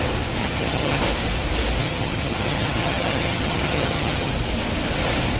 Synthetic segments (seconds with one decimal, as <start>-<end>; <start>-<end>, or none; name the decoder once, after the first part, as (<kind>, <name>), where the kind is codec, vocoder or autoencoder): 0.4-1.0 (vocoder, HiFi-GAN); 1.8-4.3